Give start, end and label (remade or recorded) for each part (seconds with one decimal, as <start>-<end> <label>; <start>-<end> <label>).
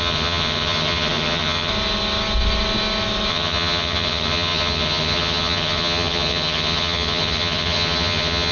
0.0-1.7 remade; 1.7-3.3 recorded; 3.3-8.5 remade